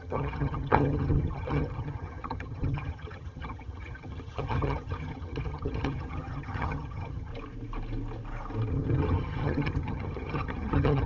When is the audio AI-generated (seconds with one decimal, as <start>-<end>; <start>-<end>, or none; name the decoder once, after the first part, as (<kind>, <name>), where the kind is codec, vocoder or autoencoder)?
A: 0.0-7.3 (vocoder, HiFi-GAN); 8.7-11.1